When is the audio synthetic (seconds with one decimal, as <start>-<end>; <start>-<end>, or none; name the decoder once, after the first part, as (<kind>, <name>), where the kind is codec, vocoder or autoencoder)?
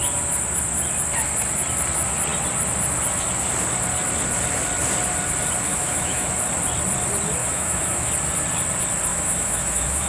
5.7-6.3 (autoencoder, DAC-VAE); 7.4-8.1; 9.1-10.1